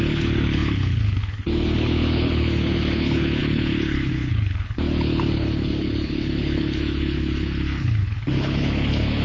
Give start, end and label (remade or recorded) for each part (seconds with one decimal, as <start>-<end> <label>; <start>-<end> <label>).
0.0-9.2 remade